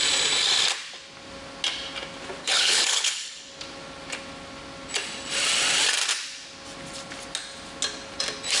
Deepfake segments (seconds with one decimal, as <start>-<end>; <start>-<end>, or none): 2.4-3.5